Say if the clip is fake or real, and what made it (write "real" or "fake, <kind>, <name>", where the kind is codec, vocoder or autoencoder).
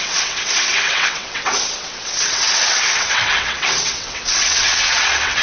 fake, vocoder, WaveNeXt